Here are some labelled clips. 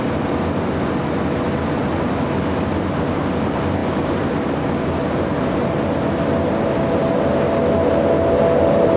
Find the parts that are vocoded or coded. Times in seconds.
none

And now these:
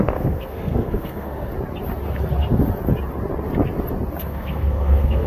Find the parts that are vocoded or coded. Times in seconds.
0.0-1.5; 4.2-5.3

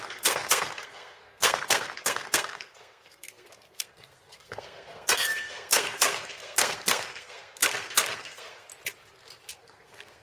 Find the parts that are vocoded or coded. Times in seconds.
0.0-8.7; 9.5-10.2

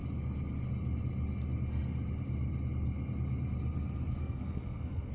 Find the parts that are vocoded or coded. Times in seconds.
4.2-5.1